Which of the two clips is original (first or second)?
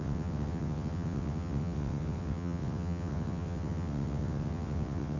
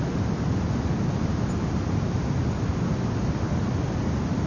second